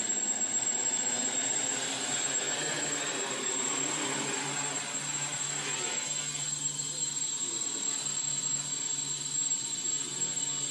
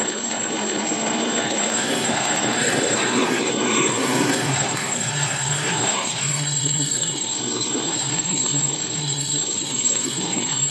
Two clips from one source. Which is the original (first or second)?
first